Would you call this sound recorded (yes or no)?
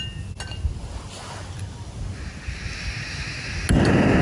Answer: yes